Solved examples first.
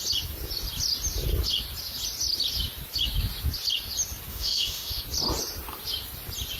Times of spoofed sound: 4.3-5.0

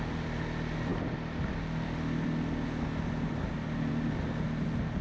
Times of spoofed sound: none

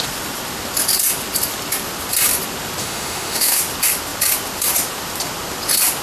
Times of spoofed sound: 2.8-3.6

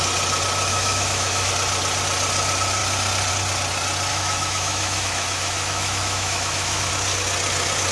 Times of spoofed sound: 0.7-1.5; 4.1-6.9

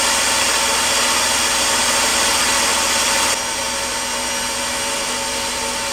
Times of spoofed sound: 2.1-2.9

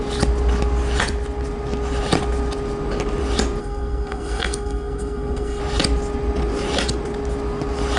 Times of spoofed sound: 3.6-5.6